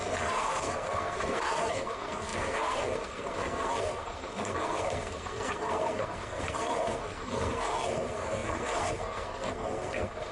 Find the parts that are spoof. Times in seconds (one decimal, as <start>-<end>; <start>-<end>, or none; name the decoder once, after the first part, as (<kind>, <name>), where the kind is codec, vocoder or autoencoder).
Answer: 0.0-10.3 (codec, SNAC)